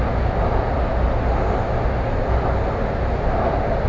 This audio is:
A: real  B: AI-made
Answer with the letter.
A